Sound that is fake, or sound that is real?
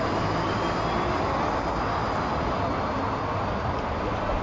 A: real